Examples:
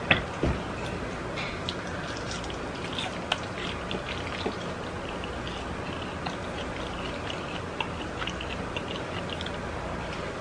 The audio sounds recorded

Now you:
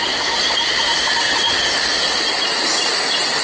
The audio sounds recorded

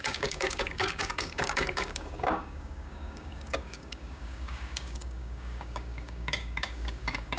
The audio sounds remade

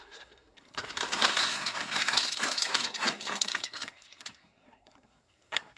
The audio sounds remade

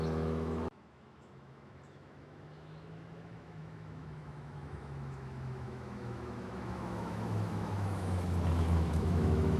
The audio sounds remade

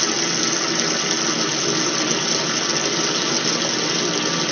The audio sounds recorded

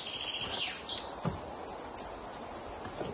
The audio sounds recorded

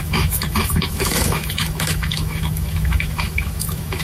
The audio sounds remade